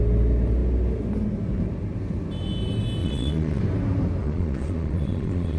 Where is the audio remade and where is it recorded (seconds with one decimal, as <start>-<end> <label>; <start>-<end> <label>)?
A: 0.0-3.0 recorded; 3.0-3.6 remade; 3.6-4.2 recorded; 4.2-5.6 remade

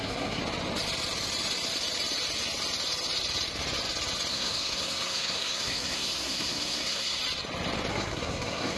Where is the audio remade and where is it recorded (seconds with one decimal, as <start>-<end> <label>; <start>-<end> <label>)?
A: 0.0-0.4 remade; 0.4-4.3 recorded; 4.3-7.2 remade; 7.2-7.9 recorded; 7.9-8.8 remade